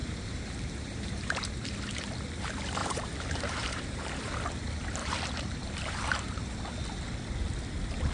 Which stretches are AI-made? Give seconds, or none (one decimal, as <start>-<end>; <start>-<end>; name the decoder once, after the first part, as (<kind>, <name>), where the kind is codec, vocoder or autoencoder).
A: 0.0-1.5 (vocoder, BigVGAN v2); 2.8-4.3; 5.0-6.4